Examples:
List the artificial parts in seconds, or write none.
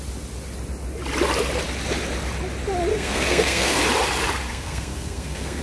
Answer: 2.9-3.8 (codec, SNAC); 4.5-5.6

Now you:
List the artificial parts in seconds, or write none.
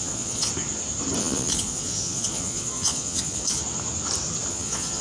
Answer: 0.0-0.5 (vocoder, Vocos); 1.2-3.6; 4.5-5.0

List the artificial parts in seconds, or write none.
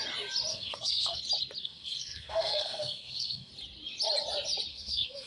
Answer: 0.5-1.2 (codec, SNAC); 1.6-3.5; 4.7-5.3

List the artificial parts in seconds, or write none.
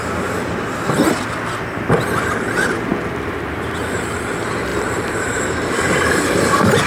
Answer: 4.7-6.9 (vocoder, BigVGAN v2)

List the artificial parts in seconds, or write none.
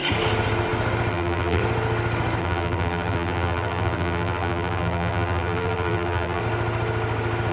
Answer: 1.1-1.6 (vocoder, BigVGAN v2); 2.4-6.4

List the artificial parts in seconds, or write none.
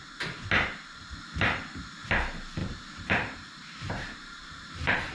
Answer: 1.0-2.1 (vocoder, BigVGAN v2); 2.6-5.1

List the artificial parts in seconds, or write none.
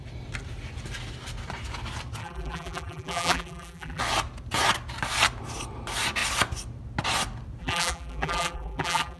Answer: 2.2-4.0 (vocoder, BigVGAN v2); 7.6-9.2